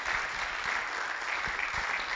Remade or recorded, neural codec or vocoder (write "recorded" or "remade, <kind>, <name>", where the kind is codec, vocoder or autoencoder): recorded